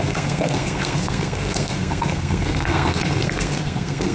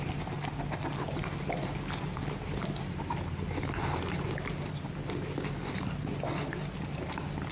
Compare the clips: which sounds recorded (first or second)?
second